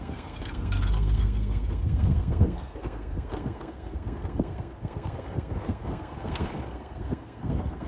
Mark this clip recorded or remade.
remade